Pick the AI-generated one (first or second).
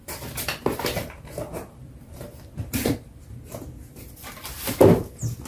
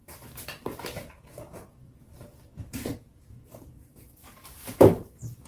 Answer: second